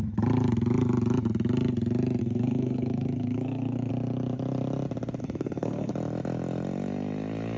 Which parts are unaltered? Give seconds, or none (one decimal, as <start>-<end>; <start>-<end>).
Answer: 0.0-2.2; 3.9-5.2; 5.9-7.6